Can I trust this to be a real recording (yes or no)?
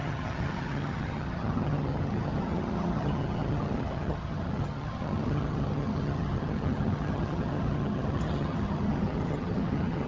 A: no